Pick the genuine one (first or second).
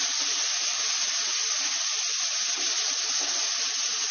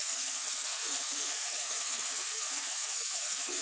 first